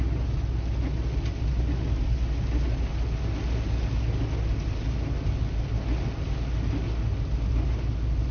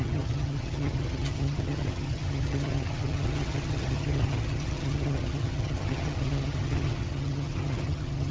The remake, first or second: second